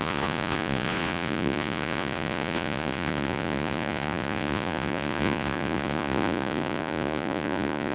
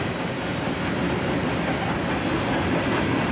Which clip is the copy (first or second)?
first